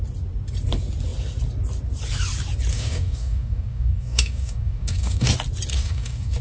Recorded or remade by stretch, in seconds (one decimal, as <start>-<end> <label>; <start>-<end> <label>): 0.0-2.7 recorded; 2.7-5.3 remade; 5.3-5.7 recorded; 5.7-6.4 remade